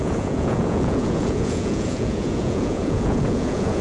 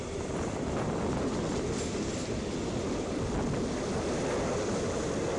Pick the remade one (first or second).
first